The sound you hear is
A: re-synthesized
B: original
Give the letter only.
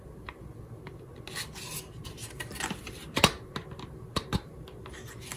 B